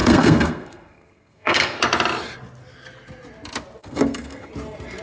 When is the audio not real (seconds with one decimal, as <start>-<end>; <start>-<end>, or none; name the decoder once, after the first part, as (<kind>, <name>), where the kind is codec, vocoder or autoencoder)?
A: 0.0-1.8 (codec, SNAC); 3.8-4.5